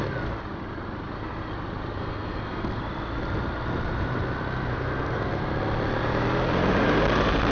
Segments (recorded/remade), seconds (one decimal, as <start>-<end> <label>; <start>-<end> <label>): 0.0-2.0 recorded; 2.0-2.8 remade; 2.8-4.7 recorded; 4.7-5.3 remade; 5.3-7.5 recorded